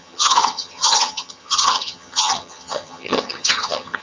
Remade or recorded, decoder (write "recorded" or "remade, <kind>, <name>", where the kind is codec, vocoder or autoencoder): remade, vocoder, HiFi-GAN